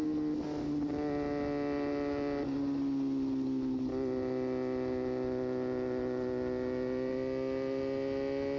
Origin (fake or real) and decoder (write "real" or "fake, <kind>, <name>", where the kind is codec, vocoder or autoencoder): real